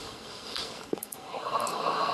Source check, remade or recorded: remade